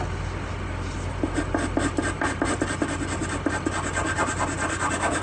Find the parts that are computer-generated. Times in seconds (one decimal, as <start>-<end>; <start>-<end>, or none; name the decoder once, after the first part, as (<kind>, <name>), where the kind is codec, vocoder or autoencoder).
none